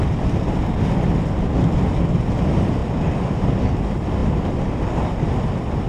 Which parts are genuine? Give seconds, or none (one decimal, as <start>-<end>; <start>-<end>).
0.0-5.9